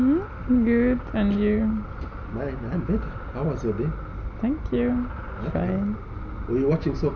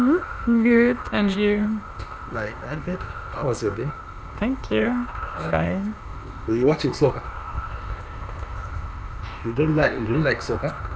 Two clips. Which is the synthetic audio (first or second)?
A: second